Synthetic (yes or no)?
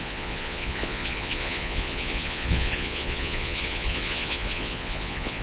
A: yes